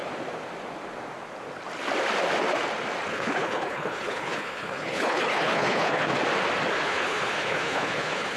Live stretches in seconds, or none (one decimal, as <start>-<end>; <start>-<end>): 0.0-3.1; 6.1-6.7